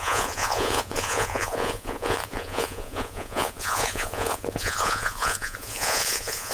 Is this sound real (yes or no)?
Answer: no